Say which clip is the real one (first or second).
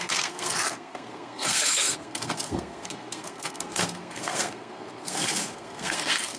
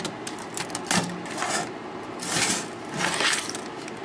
second